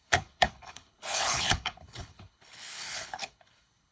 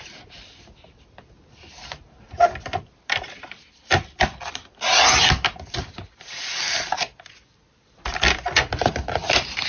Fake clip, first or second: first